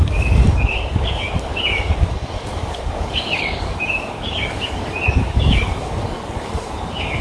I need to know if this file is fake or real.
fake